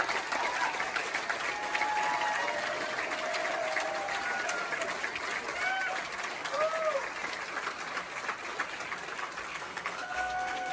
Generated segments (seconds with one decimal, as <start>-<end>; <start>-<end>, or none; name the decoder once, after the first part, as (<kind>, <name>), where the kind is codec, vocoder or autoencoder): 9.5-10.7 (codec, SNAC)